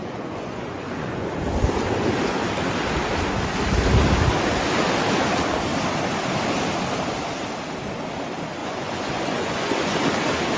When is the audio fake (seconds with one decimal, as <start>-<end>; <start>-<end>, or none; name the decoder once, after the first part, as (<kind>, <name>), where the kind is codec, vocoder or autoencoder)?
0.0-1.3 (vocoder, Vocos); 8.6-10.0